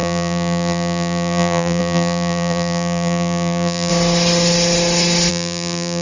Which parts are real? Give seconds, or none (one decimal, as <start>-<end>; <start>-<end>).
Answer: 3.9-5.3